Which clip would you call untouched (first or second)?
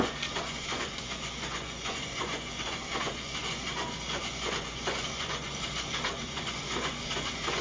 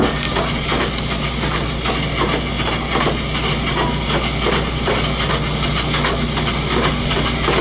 second